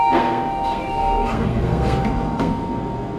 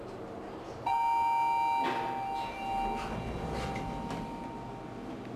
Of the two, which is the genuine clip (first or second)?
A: second